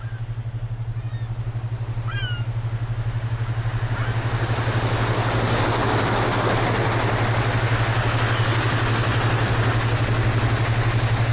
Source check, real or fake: real